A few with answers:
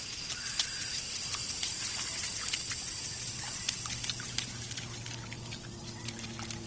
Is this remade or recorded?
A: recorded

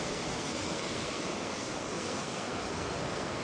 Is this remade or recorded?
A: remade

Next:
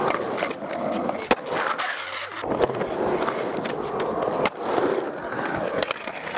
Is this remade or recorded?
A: recorded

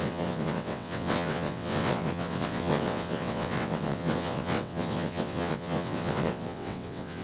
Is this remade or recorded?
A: remade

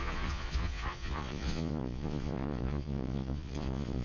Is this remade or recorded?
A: remade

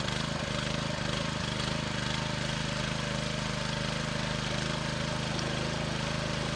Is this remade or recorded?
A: recorded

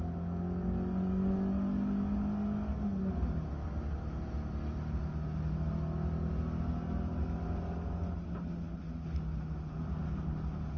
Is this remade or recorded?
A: recorded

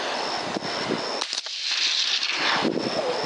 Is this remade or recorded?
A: recorded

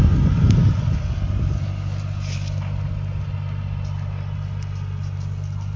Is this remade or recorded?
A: recorded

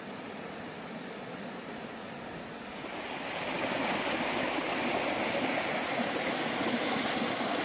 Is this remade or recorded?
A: recorded